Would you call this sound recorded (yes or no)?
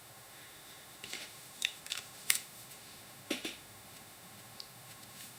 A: no